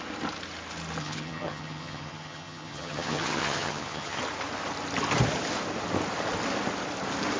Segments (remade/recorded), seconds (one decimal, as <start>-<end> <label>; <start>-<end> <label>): 0.0-1.0 recorded; 1.0-4.2 remade; 4.2-7.4 recorded